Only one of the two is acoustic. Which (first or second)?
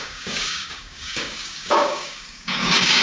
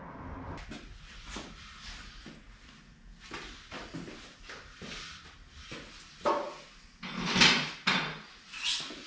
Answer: second